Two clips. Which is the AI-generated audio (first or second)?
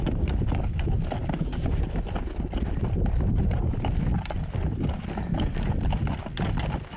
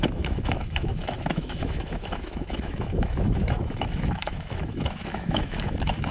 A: second